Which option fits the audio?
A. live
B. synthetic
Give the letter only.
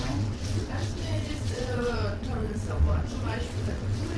B